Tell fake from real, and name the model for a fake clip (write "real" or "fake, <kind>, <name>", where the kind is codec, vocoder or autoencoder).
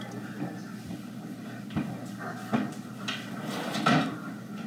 real